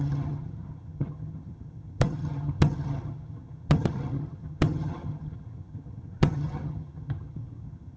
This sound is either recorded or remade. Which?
remade